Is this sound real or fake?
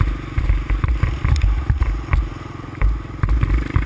real